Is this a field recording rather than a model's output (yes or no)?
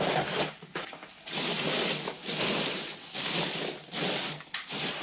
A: yes